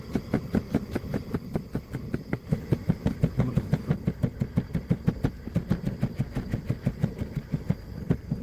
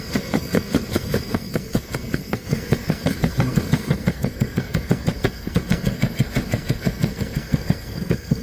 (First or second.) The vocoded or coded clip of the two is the second